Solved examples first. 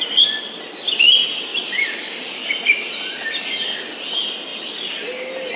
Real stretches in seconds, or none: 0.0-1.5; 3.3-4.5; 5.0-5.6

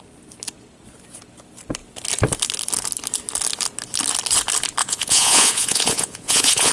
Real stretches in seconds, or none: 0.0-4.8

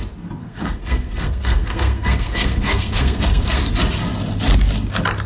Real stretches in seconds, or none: 0.0-0.4; 3.6-5.3

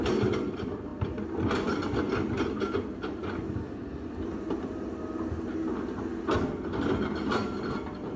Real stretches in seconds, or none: 0.0-8.2

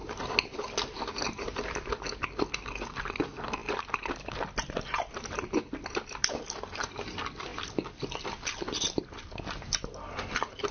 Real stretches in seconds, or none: 0.0-3.6; 5.2-10.7

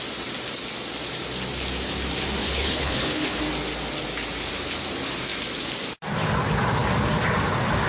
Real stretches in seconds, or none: 0.0-2.4; 3.4-7.9

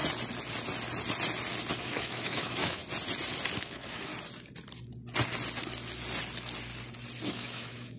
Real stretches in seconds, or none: 0.0-1.8; 2.8-3.6; 4.1-7.3

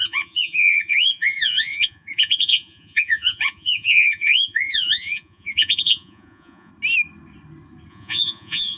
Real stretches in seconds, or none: 6.7-7.9